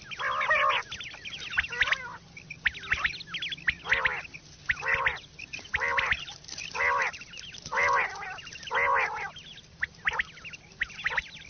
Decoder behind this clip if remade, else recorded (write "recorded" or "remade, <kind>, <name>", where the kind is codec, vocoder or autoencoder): recorded